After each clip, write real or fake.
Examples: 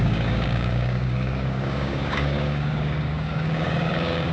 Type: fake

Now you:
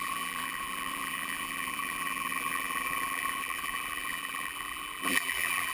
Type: fake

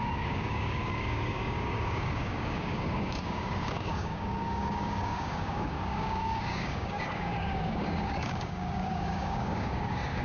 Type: fake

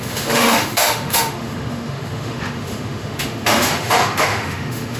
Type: fake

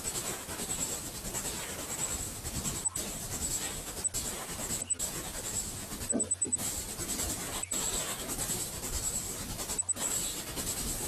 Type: real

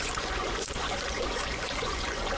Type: fake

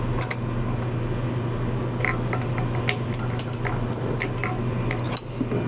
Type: real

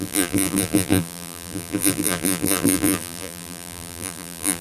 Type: fake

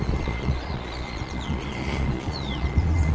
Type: fake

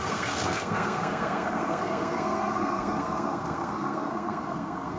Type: fake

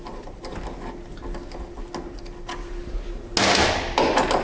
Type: real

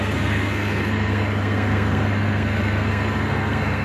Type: fake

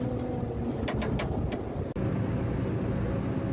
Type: real